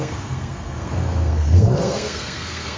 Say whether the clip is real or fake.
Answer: fake